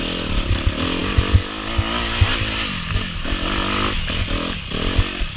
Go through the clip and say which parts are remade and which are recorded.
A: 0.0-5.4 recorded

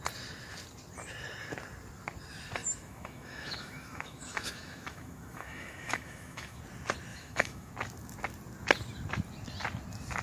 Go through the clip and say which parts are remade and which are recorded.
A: 0.0-2.6 recorded; 2.6-6.6 remade; 6.6-7.1 recorded; 7.1-7.7 remade; 7.7-10.2 recorded

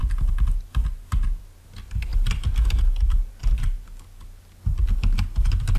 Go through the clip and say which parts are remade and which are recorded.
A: 0.0-5.8 recorded

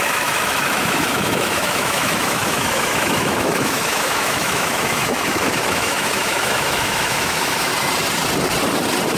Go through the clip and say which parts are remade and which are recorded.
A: 0.0-7.7 remade; 7.7-9.2 recorded

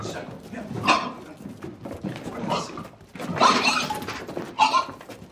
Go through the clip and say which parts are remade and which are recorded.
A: 0.0-5.3 recorded